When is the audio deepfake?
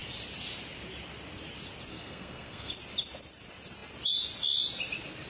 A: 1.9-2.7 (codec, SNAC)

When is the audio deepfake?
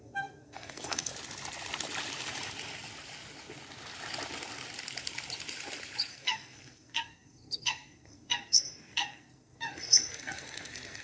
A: 0.0-1.1 (codec, SNAC); 6.1-11.0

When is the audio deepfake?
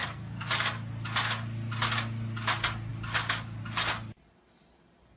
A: 0.0-0.5 (codec, SNAC)